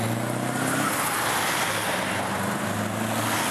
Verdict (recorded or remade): recorded